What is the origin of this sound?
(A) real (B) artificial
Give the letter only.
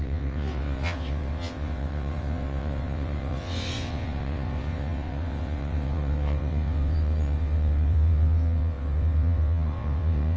B